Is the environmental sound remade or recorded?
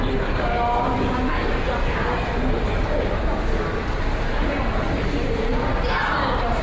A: recorded